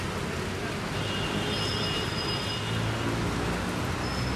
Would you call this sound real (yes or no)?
yes